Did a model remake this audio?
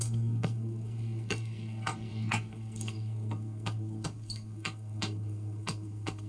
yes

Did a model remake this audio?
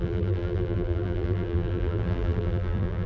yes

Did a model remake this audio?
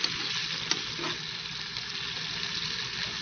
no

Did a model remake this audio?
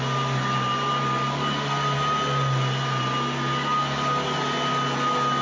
no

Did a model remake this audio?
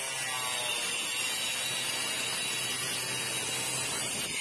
no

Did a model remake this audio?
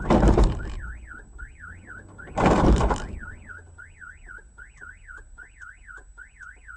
no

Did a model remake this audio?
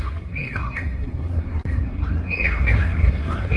yes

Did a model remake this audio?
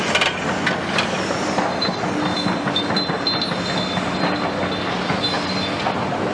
no